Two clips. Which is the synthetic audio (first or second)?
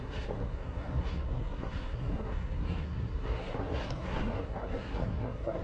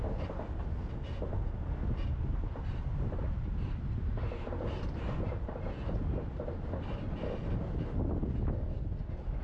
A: first